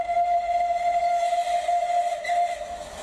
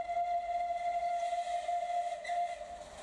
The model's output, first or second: first